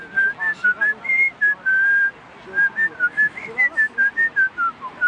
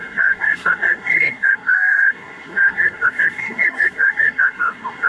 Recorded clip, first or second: first